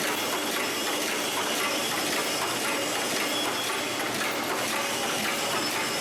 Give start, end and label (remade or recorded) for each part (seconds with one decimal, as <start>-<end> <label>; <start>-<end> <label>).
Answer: 0.0-6.0 recorded